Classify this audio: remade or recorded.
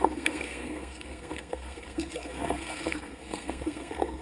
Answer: remade